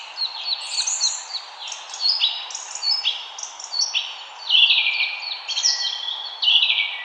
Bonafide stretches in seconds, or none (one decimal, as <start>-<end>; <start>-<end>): 0.0-7.0